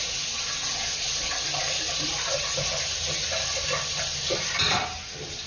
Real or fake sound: real